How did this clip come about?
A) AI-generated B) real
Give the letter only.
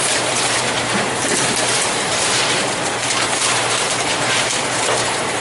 A